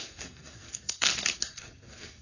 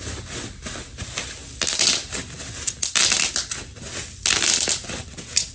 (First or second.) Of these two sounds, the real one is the second